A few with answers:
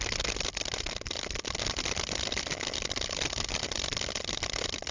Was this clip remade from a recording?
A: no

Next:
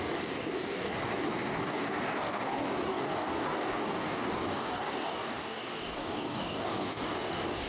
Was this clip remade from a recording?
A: yes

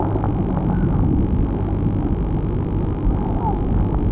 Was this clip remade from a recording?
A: no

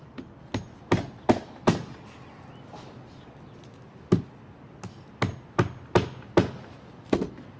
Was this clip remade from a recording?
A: no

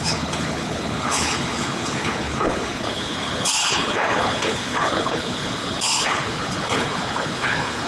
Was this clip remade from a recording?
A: yes